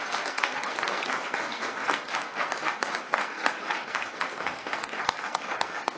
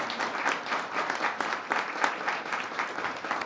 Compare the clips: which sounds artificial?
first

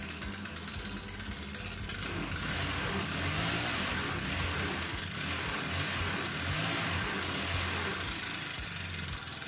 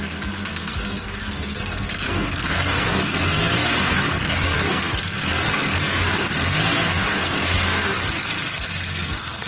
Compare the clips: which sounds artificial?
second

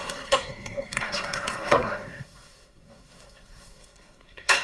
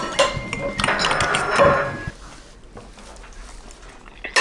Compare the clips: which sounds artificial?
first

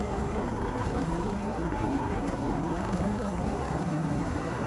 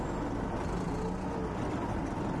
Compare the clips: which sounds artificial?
first